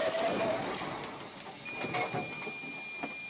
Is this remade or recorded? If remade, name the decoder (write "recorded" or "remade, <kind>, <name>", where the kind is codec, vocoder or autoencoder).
recorded